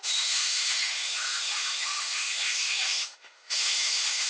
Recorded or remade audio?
remade